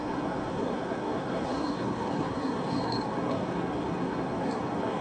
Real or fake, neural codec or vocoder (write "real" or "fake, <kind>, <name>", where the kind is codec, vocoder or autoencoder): fake, codec, SNAC